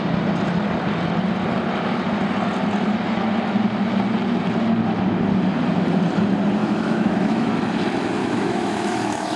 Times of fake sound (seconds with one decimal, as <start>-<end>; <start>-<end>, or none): 6.6-7.5; 8.2-9.4